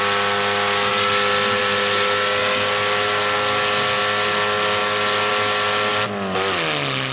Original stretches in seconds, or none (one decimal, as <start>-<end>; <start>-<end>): 0.0-7.1

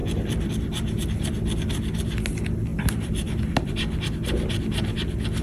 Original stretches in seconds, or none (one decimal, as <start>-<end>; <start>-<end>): 0.5-2.7; 3.7-5.4

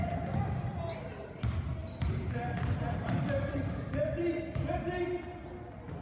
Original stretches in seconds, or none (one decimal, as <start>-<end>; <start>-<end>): 0.0-1.8; 4.3-6.0

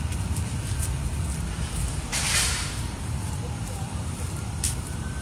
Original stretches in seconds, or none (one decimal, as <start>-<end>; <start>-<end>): 0.0-2.1

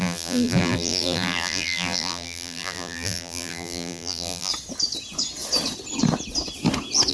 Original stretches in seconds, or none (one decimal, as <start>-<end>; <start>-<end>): 4.5-7.1

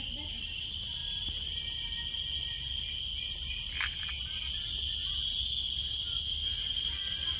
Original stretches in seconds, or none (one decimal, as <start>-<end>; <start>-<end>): 0.0-6.0; 6.7-7.4